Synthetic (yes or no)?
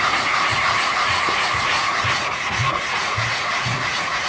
yes